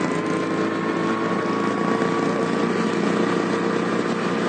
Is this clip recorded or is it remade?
recorded